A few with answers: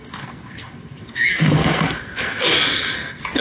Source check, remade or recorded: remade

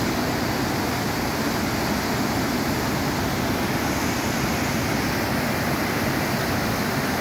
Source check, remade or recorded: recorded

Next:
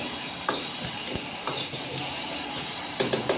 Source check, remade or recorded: recorded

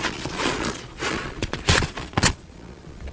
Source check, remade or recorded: remade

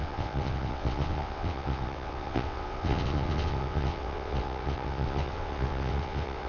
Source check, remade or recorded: remade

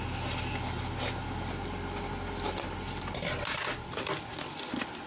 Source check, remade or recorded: recorded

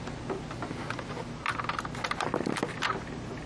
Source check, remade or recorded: recorded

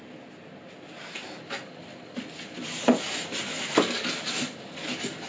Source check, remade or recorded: recorded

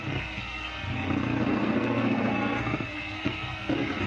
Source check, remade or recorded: remade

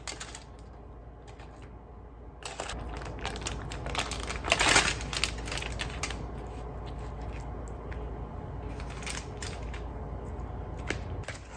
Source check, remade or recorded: recorded